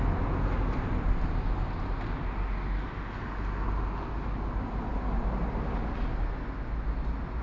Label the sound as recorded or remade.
recorded